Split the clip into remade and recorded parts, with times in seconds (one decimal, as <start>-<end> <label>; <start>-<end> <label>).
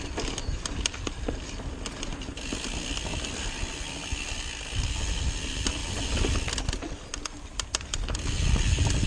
0.0-9.1 recorded